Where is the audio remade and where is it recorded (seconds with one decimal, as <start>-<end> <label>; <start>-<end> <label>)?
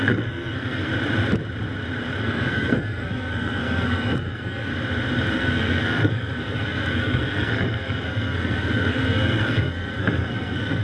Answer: 0.0-0.9 remade; 0.9-2.2 recorded; 2.2-4.7 remade; 4.7-5.3 recorded; 5.3-10.8 remade